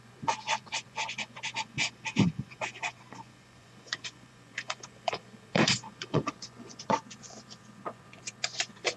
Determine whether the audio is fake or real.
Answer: fake